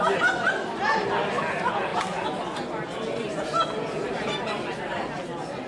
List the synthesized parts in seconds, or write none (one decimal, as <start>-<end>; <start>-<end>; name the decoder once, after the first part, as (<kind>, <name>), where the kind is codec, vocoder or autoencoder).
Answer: none